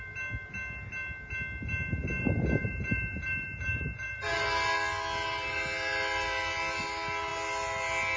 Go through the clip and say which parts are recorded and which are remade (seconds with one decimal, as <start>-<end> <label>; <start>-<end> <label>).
0.0-2.0 recorded; 2.0-4.2 remade; 4.2-8.2 recorded